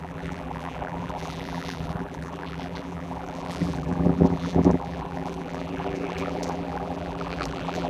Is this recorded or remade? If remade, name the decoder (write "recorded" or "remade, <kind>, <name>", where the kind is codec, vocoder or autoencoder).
remade, vocoder, BigVGAN v2